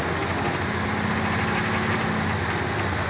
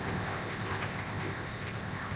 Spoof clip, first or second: second